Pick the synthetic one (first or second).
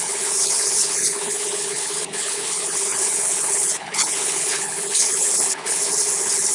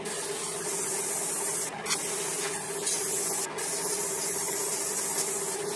first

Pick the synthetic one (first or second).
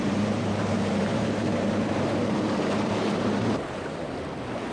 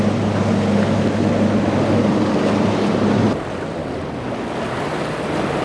first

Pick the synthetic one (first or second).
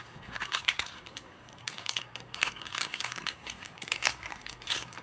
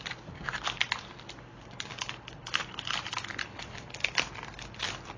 first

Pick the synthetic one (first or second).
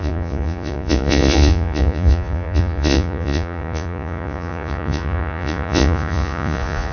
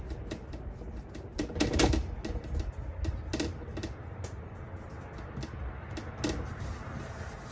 first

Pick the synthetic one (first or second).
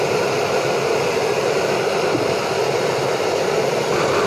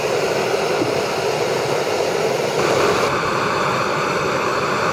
second